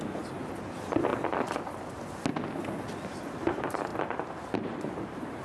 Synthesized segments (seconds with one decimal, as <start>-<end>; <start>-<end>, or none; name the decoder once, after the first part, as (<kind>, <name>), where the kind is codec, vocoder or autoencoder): 3.9-5.4 (vocoder, BigVGAN v2)